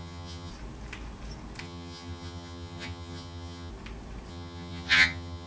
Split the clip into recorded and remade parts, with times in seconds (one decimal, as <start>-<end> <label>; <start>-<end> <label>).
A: 0.0-0.5 remade; 0.5-1.6 recorded; 1.6-3.7 remade; 3.7-4.3 recorded; 4.3-5.5 remade